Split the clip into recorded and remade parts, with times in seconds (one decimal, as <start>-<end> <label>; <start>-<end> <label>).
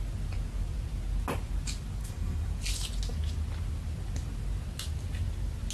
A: 0.0-2.0 recorded; 2.0-2.5 remade; 2.5-5.7 recorded